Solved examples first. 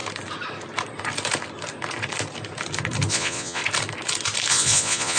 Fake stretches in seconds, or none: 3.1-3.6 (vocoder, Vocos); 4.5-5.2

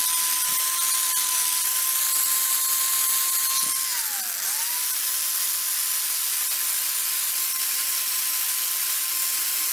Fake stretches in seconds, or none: none

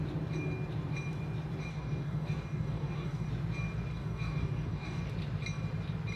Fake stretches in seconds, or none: 1.7-3.3 (codec, DAC); 3.9-5.0

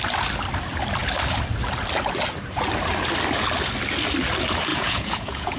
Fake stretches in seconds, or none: 4.7-5.6 (vocoder, Vocos)